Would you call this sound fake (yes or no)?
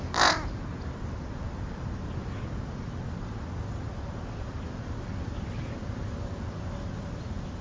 no